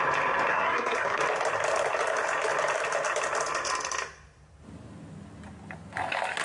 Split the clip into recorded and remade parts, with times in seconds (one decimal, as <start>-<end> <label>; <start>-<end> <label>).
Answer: 0.0-0.5 recorded; 0.5-1.2 remade; 1.2-6.4 recorded